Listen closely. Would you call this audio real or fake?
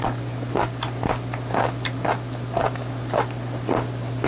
real